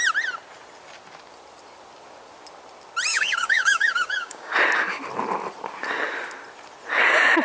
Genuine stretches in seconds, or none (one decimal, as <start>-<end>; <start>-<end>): 0.0-3.1; 4.5-7.4